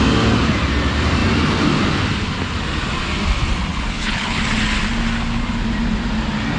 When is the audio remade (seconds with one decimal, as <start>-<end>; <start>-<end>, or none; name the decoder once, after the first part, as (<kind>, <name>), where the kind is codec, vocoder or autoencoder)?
3.7-4.4 (codec, HILCodec)